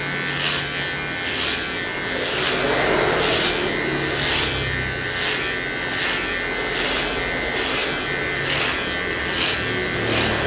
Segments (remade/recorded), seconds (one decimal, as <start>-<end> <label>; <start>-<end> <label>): 0.0-10.5 recorded